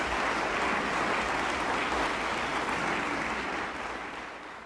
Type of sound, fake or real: real